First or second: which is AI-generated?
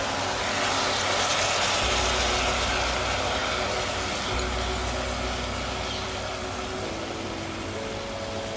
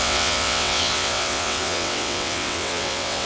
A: second